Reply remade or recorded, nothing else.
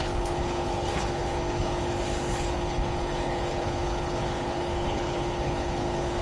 remade